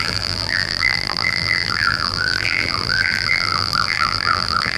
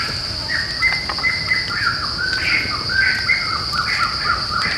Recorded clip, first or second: second